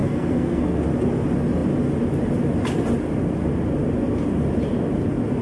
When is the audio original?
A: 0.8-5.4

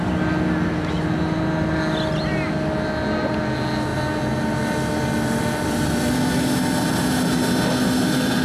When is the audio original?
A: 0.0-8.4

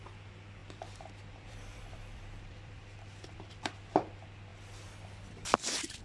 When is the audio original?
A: 0.0-0.6; 3.6-4.5

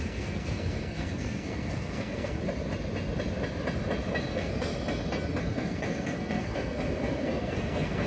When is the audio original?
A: 2.4-4.3; 4.7-5.4

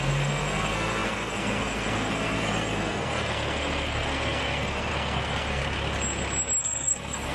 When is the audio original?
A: 5.6-6.6

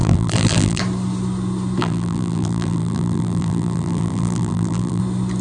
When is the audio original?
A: 0.8-1.8; 5.0-5.4

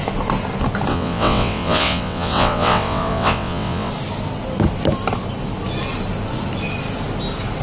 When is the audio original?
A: 0.0-0.9; 3.9-7.6

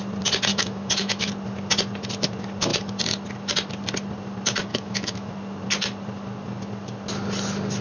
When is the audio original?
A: 0.0-0.5; 1.3-4.7; 5.3-7.8